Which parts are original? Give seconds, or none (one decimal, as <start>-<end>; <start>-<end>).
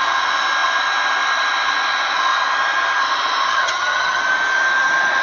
0.0-3.5; 4.2-5.2